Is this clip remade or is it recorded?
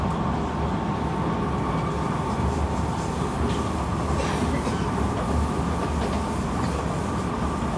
recorded